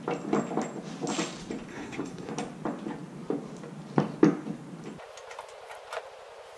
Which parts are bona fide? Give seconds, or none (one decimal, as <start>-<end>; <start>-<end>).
0.0-1.7; 2.3-6.6

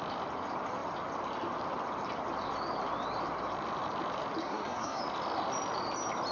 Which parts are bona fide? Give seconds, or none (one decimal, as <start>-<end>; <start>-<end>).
0.0-4.4; 5.0-6.3

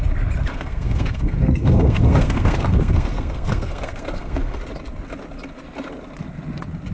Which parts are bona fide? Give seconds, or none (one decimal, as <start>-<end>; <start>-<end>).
0.0-0.5; 4.6-6.9

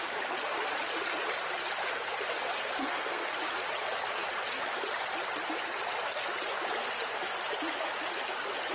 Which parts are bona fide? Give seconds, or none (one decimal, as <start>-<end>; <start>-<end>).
0.0-2.8; 3.3-8.7